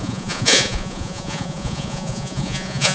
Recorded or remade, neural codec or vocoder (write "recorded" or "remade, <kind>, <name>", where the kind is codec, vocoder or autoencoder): remade, vocoder, Vocos